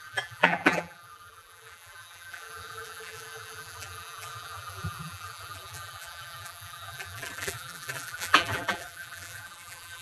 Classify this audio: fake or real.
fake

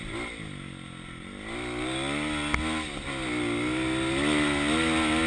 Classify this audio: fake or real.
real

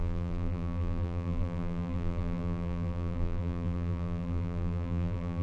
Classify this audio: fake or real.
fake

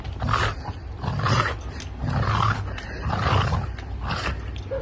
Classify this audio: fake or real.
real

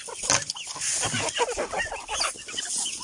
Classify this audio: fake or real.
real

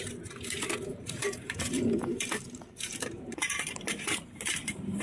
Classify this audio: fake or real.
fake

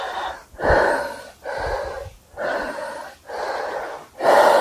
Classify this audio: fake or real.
real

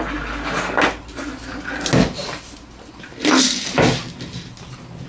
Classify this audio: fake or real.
real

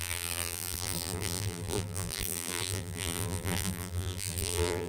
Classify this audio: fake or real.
fake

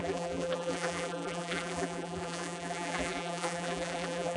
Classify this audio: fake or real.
fake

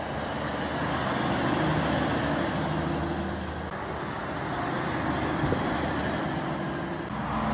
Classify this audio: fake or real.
real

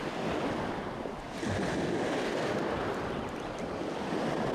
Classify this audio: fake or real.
real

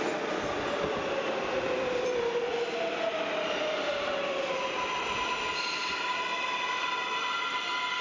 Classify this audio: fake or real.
real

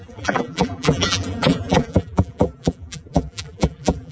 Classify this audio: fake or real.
fake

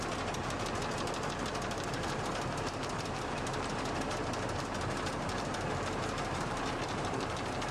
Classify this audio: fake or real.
fake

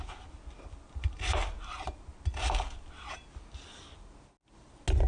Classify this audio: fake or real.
real